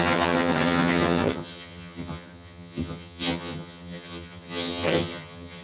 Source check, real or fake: fake